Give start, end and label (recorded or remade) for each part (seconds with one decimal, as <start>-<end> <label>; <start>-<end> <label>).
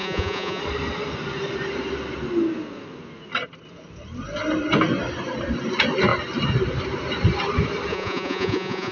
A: 0.0-0.6 remade; 0.6-7.9 recorded; 7.9-8.9 remade